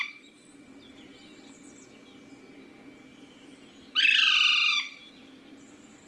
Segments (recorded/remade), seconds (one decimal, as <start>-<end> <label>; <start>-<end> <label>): 0.0-3.1 recorded; 3.1-6.1 remade